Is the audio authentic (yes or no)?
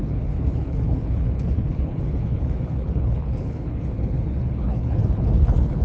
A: no